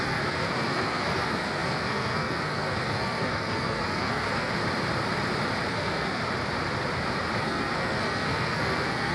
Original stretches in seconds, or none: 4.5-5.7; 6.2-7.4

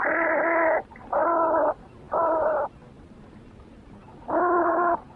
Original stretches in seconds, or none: 0.0-5.2

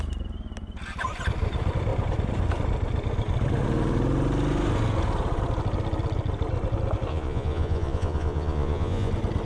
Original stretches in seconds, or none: 0.0-7.1; 9.1-9.5

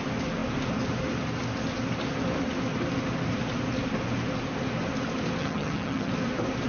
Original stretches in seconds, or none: 0.0-5.4; 6.1-6.7

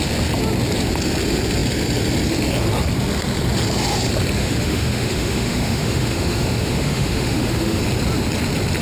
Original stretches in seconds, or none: 0.0-4.4; 7.8-8.8

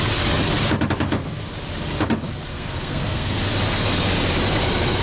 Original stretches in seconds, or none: 0.0-2.5; 3.4-5.0